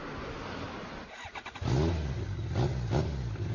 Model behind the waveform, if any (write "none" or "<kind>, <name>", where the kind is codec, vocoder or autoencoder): none